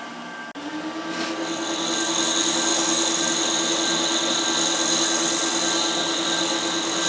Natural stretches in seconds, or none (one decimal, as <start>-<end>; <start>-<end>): 0.0-7.1